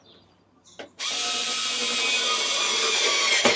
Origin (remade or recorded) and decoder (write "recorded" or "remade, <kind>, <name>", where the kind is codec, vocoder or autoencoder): remade, vocoder, BigVGAN v2